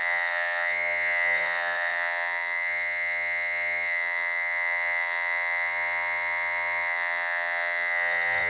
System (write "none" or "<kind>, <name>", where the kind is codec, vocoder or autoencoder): vocoder, WaveNeXt